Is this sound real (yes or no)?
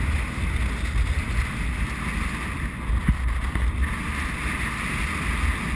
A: yes